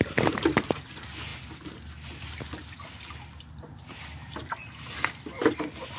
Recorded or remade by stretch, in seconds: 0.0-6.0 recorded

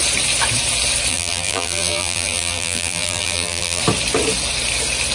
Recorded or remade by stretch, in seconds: 0.0-1.1 recorded; 1.1-3.8 remade; 3.8-5.1 recorded